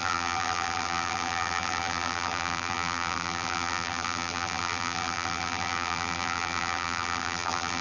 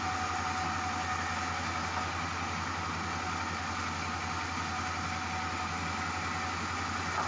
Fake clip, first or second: first